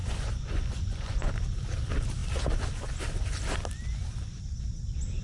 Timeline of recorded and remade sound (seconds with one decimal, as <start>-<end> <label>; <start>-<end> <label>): 0.0-1.3 remade; 1.3-5.2 recorded

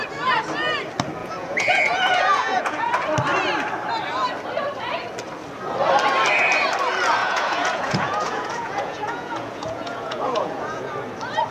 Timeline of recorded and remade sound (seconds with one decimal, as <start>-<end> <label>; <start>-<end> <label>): 0.0-1.2 recorded; 1.2-2.9 remade; 2.9-7.2 recorded; 7.2-10.9 remade; 10.9-11.5 recorded

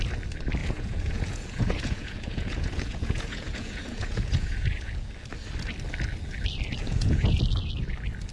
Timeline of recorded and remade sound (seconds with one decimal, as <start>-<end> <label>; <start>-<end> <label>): 0.0-0.6 recorded; 0.6-5.1 remade; 5.1-6.8 recorded; 6.8-7.4 remade; 7.4-8.3 recorded

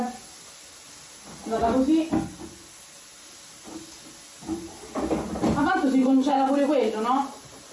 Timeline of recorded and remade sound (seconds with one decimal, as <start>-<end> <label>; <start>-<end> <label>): 0.0-6.0 recorded; 6.0-6.7 remade; 6.7-7.7 recorded

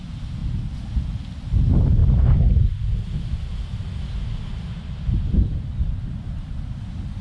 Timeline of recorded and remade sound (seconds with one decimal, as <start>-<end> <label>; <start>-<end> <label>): 0.0-7.2 recorded

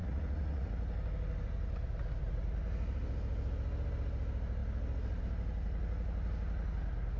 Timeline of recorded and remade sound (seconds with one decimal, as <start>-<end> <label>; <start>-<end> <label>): 0.0-0.7 remade; 0.7-7.2 recorded